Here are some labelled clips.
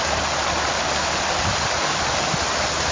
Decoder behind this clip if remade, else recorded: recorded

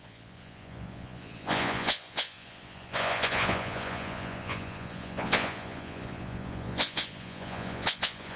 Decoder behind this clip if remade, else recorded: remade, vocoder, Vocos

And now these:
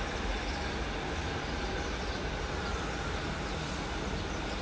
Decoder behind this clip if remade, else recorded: recorded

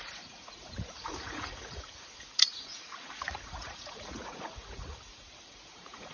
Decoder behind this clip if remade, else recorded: remade, vocoder, Vocos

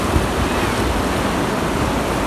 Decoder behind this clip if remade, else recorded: recorded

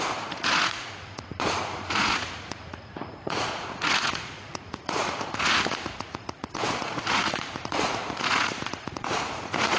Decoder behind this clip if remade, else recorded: remade, vocoder, Vocos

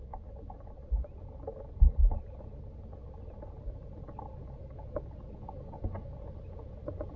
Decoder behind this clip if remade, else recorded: recorded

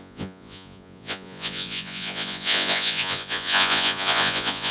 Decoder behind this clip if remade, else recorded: remade, vocoder, Vocos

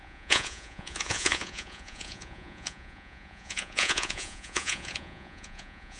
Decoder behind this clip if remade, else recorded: remade, vocoder, Vocos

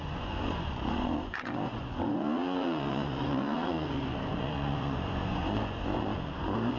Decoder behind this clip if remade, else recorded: remade, vocoder, Vocos